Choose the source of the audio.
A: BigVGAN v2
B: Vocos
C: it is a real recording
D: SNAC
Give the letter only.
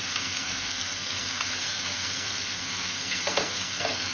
D